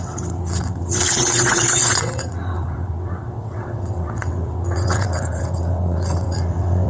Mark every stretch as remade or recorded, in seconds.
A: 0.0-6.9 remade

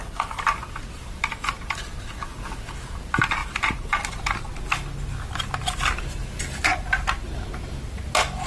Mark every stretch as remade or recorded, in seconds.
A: 0.0-3.4 recorded; 3.4-3.9 remade; 3.9-8.5 recorded